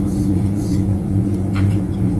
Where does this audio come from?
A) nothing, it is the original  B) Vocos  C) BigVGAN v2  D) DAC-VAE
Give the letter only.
B